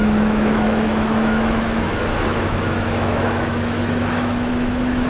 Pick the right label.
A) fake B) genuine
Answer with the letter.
A